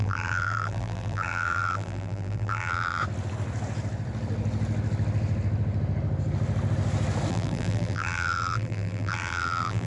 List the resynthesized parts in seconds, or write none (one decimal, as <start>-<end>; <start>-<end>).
0.0-3.0; 7.3-9.9